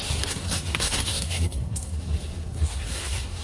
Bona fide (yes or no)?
no